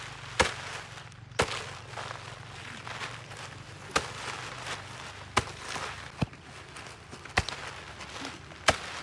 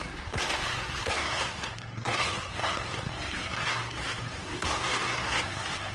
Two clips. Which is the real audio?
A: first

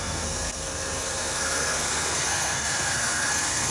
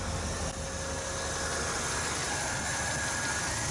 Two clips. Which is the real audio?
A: second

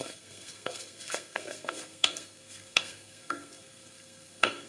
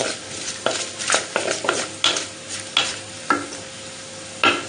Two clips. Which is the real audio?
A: second